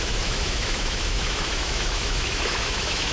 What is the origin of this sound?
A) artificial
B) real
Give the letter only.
A